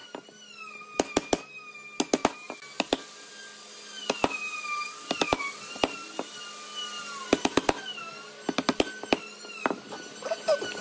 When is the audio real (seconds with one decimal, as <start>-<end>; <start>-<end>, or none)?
0.0-10.8